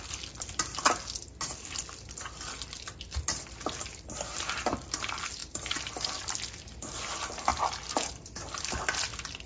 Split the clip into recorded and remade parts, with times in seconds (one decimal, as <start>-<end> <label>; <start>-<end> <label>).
0.0-9.5 recorded